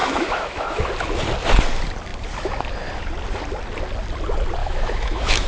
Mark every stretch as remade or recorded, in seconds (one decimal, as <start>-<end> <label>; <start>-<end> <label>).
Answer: 0.0-0.8 remade; 0.8-4.6 recorded; 4.6-5.5 remade